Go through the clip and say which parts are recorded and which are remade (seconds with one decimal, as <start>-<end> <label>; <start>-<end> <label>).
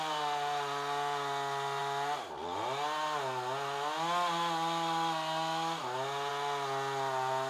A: 0.0-7.5 recorded